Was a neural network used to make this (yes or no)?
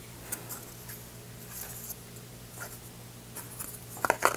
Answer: no